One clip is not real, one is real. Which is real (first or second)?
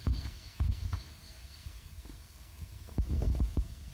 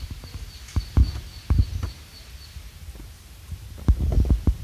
second